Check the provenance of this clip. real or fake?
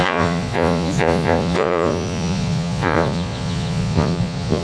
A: fake